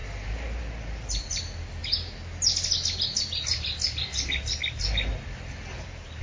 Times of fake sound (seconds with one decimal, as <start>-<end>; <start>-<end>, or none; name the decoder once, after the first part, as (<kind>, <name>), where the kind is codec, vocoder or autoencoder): none